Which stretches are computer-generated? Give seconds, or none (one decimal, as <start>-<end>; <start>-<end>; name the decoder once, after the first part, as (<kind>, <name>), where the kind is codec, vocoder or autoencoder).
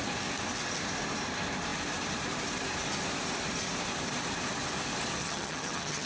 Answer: 5.2-6.1 (vocoder, HiFi-GAN)